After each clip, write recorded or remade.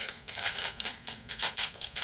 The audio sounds remade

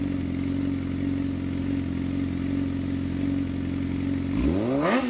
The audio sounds recorded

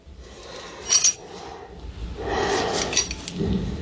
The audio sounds recorded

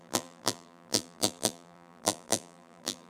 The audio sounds remade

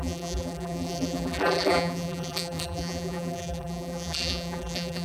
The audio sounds remade